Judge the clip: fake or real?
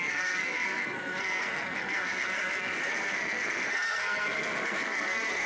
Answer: fake